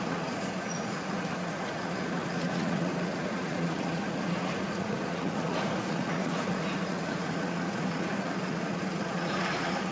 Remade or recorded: remade